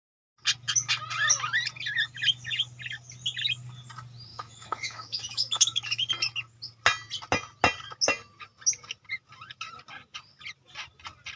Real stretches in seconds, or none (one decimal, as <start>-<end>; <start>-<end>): 0.0-4.3; 6.1-11.4